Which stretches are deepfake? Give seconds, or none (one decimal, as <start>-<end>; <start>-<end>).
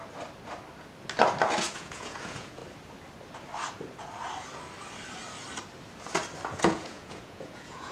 1.7-2.6; 6.5-7.9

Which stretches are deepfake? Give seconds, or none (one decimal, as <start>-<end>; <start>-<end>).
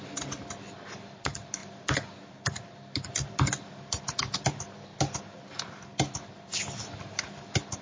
none